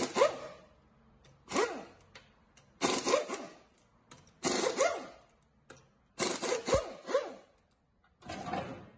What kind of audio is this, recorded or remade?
recorded